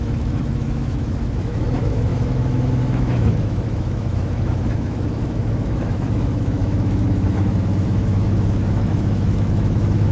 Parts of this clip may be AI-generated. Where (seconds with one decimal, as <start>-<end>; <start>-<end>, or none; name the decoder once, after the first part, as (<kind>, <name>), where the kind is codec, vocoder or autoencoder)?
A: 0.0-10.1 (autoencoder, DAC-VAE)